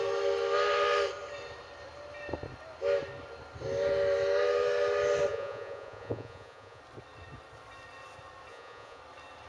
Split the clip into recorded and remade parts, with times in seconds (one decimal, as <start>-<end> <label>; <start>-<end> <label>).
0.0-5.3 recorded; 5.3-6.8 remade; 6.8-8.5 recorded; 8.5-9.0 remade; 9.0-9.5 recorded